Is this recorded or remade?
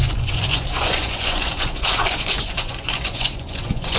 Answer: remade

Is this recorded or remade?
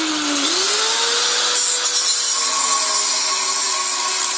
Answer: recorded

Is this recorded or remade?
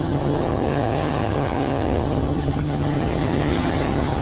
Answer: remade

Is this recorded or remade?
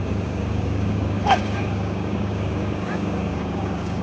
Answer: remade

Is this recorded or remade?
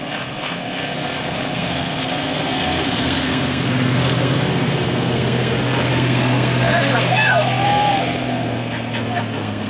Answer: remade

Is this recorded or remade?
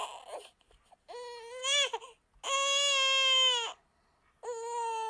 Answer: recorded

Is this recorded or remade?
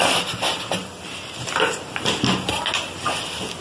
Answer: recorded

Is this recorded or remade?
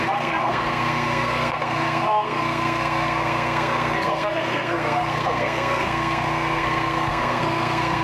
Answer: remade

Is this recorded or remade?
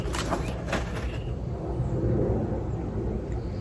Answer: recorded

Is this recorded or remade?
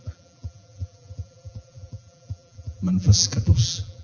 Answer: remade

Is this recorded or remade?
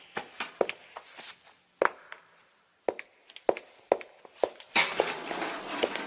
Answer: recorded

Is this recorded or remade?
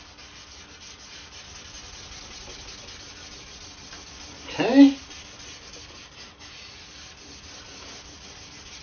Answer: recorded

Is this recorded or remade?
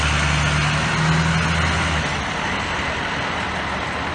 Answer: recorded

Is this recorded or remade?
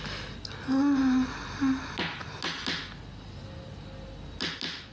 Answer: recorded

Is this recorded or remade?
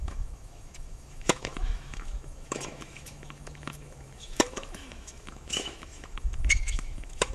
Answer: remade